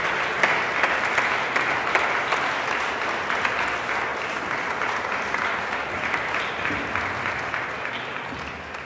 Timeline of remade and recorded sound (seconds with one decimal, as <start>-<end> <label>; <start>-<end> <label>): 0.0-8.8 recorded